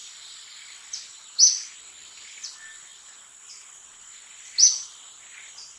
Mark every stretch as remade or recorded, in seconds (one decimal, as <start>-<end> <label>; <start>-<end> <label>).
0.0-5.8 recorded